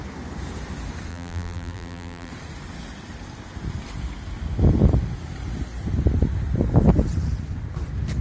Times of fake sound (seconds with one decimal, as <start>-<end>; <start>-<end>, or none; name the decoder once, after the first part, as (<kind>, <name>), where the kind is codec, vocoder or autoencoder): 1.1-2.3 (vocoder, BigVGAN v2)